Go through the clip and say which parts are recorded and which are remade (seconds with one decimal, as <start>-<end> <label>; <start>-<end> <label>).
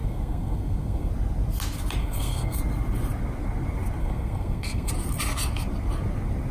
0.0-1.1 remade; 1.1-2.0 recorded; 2.0-2.6 remade; 2.6-4.0 recorded; 4.0-4.9 remade; 4.9-6.5 recorded